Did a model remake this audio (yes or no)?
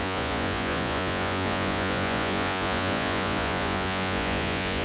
yes